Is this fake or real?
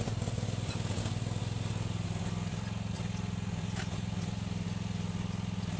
real